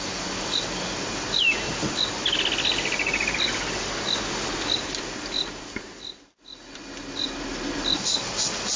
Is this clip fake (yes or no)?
no